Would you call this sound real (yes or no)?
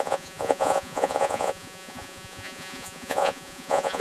no